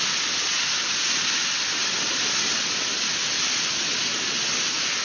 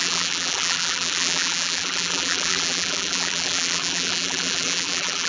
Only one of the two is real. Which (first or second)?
first